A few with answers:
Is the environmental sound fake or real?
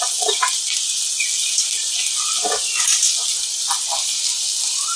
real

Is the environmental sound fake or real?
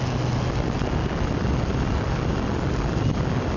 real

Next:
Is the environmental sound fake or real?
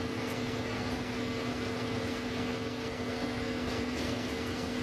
fake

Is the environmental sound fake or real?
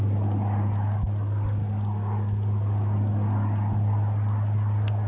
real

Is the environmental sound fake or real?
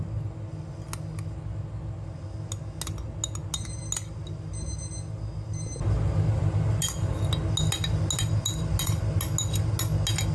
real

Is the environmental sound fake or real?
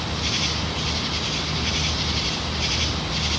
real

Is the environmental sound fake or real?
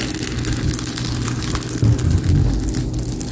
real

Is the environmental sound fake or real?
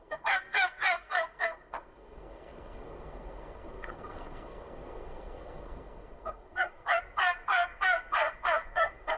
fake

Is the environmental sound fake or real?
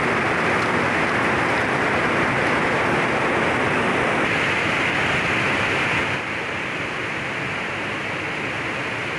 real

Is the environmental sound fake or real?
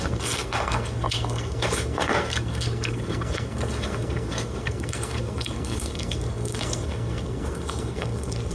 fake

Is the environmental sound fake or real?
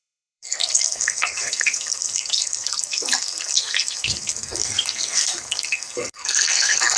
fake